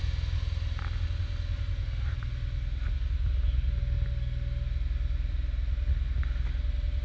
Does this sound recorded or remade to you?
recorded